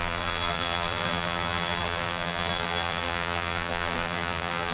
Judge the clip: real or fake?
fake